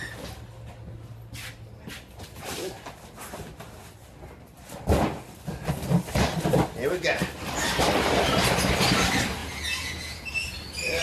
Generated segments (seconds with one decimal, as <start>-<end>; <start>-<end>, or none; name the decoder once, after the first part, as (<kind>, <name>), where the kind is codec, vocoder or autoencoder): 9.4-10.3 (vocoder, Vocos)